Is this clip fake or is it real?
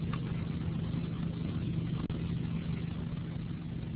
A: real